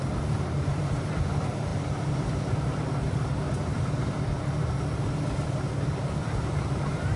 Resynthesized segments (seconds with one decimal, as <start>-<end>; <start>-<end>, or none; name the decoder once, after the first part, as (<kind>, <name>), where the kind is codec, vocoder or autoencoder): 0.0-7.2 (vocoder, BigVGAN v2)